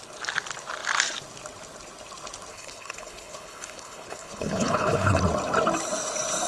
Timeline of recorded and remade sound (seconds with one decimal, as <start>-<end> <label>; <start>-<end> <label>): 0.0-2.5 recorded; 2.5-5.2 remade; 5.2-6.5 recorded